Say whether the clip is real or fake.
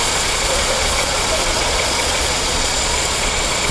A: fake